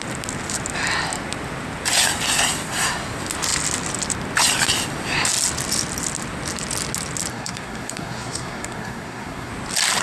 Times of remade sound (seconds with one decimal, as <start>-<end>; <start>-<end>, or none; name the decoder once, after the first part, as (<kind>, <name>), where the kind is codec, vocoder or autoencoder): 7.3-9.5 (codec, SNAC)